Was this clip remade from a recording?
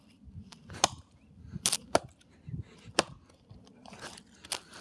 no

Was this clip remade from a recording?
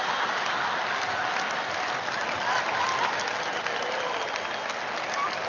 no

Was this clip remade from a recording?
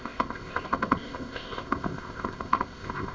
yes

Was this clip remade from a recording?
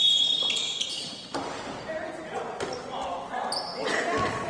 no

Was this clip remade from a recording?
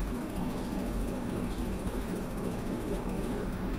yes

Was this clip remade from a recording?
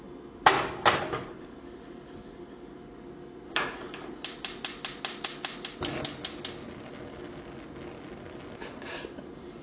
no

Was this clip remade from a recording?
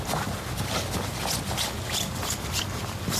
yes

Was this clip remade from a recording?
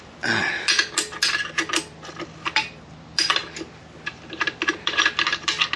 no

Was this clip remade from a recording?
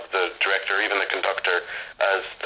no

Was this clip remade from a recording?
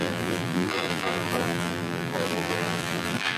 yes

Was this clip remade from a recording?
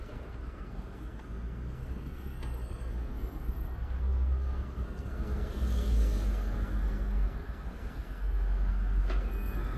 yes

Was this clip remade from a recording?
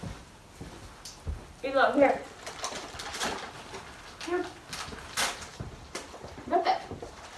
no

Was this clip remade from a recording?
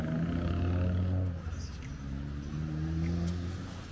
no